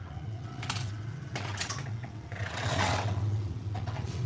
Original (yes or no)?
no